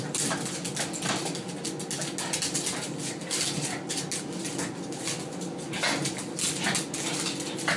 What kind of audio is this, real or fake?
real